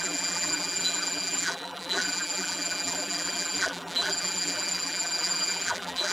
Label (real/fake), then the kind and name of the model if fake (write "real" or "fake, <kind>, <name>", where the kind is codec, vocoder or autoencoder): fake, vocoder, BigVGAN v2